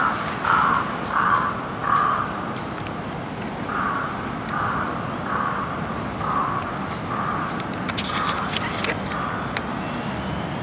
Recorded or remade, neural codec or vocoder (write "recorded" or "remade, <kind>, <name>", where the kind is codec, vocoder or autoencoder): recorded